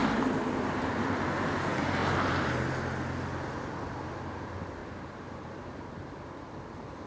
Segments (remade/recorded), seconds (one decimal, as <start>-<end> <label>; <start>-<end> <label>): 0.0-1.5 remade; 1.5-2.0 recorded; 2.0-2.6 remade; 2.6-4.8 recorded; 4.8-6.2 remade; 6.2-7.1 recorded